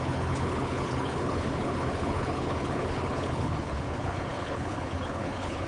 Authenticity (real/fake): fake